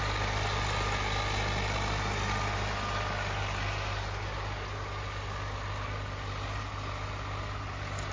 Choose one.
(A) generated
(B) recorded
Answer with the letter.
B